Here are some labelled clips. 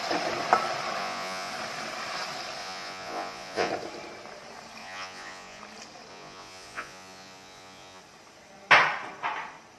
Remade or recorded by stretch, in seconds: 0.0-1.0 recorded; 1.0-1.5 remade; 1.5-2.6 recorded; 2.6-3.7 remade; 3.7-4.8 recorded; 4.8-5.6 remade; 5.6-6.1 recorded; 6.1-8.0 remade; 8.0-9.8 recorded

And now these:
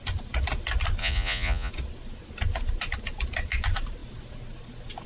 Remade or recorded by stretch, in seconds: 0.0-1.0 recorded; 1.0-1.7 remade; 1.7-5.1 recorded

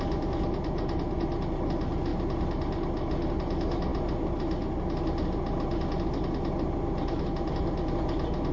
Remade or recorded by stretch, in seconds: 0.0-8.5 recorded

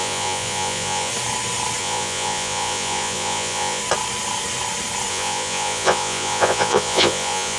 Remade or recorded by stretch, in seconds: 0.0-1.1 remade; 1.1-1.8 recorded; 1.8-3.8 remade; 3.8-5.1 recorded; 5.1-7.6 remade

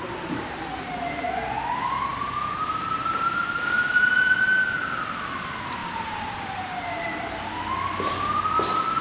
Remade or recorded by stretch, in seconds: 0.0-2.1 recorded; 2.1-2.8 remade; 2.8-5.8 recorded; 5.8-7.3 remade; 7.3-9.0 recorded

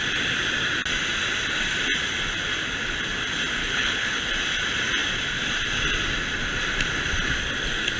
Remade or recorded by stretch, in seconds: 0.0-3.6 recorded; 3.6-4.3 remade; 4.3-8.0 recorded

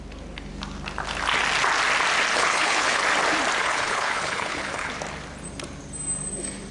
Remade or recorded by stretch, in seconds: 0.0-2.3 recorded; 2.3-3.0 remade; 3.0-3.6 recorded; 3.6-4.9 remade; 4.9-6.7 recorded